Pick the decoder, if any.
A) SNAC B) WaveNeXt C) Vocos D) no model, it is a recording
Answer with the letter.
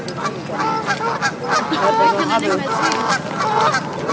D